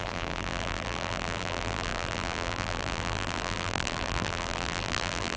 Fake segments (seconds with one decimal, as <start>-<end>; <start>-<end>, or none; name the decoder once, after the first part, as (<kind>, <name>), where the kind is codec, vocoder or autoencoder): 0.0-5.4 (vocoder, BigVGAN v2)